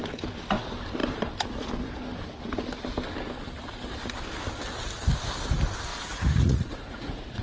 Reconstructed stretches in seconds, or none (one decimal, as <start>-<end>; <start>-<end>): 5.9-7.4